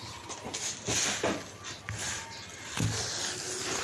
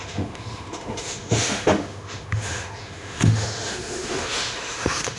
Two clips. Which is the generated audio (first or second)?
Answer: second